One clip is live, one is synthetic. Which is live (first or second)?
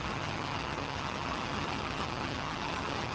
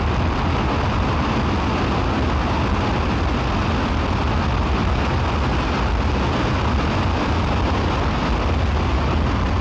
second